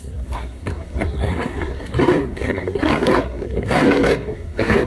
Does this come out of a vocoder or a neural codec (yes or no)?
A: yes